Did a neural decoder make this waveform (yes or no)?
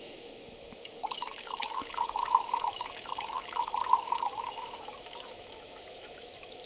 yes